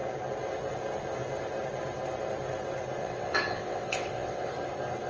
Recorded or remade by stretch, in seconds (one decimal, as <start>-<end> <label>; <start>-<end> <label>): 0.0-3.0 recorded; 3.0-4.5 remade; 4.5-5.1 recorded